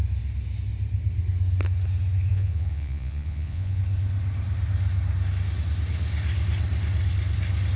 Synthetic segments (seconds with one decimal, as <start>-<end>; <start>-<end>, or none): 2.3-3.8